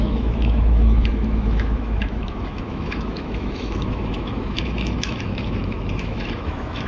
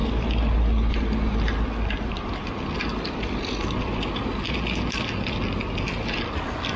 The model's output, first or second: first